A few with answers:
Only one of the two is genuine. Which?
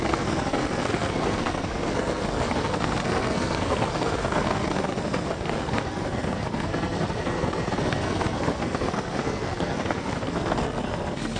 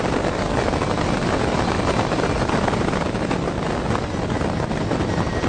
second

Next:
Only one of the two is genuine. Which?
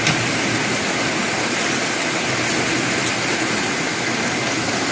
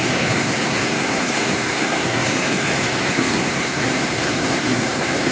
first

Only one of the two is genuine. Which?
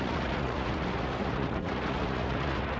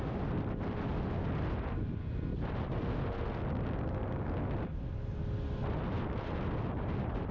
second